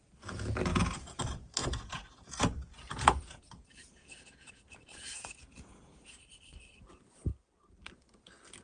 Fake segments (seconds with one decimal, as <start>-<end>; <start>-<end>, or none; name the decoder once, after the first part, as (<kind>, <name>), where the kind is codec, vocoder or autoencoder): 0.7-1.2 (vocoder, Vocos); 1.6-6.2

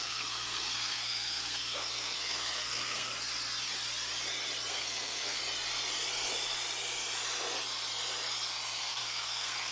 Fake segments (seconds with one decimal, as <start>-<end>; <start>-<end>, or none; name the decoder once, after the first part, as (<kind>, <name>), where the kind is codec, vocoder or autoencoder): 0.0-3.1 (codec, SNAC); 4.7-5.4; 8.8-9.7

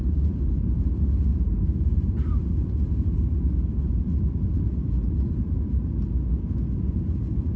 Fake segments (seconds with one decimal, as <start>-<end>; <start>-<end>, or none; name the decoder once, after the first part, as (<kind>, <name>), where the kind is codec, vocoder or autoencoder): 0.0-0.9 (vocoder, BigVGAN v2); 1.3-5.9

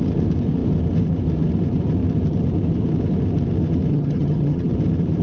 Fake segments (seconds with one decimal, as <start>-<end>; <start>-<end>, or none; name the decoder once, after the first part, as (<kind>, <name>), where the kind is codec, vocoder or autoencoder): 3.9-4.7 (vocoder, HiFi-GAN)

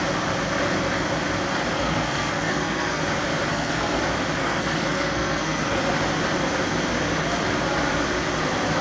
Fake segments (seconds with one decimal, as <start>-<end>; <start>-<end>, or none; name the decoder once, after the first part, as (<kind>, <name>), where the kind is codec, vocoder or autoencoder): 1.7-3.0 (codec, SNAC); 3.5-4.0; 4.4-5.8